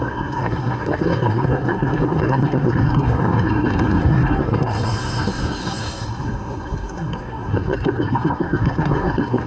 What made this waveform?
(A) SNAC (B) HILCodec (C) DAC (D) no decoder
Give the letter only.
A